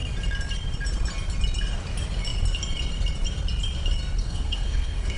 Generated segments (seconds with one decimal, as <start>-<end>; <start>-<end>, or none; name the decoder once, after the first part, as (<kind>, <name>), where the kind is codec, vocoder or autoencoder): 4.2-5.2 (codec, SNAC)